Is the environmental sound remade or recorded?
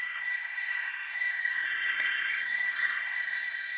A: remade